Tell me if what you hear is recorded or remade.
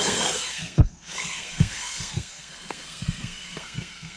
remade